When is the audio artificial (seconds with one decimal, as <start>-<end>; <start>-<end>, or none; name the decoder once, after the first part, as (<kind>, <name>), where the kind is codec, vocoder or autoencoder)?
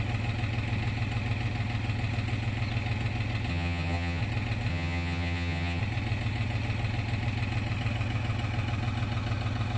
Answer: 3.5-4.2 (vocoder, HiFi-GAN); 4.7-5.8